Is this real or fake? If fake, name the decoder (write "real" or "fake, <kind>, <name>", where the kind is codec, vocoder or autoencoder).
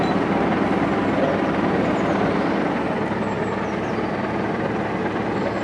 real